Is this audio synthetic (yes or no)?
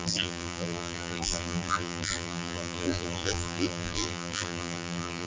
yes